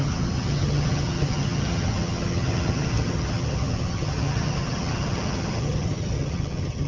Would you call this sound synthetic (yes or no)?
yes